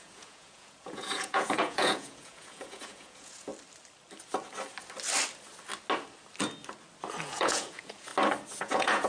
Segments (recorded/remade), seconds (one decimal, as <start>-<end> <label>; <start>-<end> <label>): 0.0-3.5 remade; 3.5-7.2 recorded; 7.2-8.1 remade; 8.1-8.6 recorded; 8.6-9.1 remade